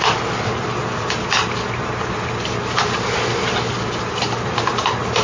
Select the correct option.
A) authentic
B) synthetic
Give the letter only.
A